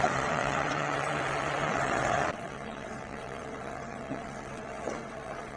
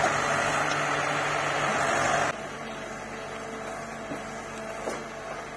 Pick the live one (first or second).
second